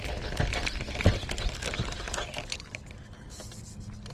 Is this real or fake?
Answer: real